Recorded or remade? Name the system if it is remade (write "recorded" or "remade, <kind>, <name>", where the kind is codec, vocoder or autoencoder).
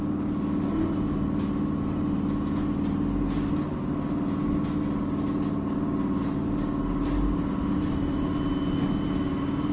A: recorded